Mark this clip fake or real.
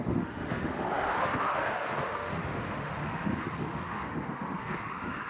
fake